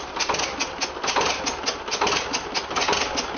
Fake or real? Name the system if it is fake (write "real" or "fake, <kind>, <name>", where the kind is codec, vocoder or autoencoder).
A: real